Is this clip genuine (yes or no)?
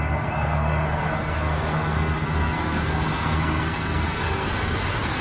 no